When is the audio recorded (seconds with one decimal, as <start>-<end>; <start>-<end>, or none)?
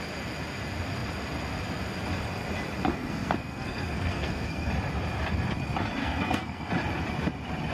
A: 0.0-2.9; 4.7-6.0; 6.7-7.7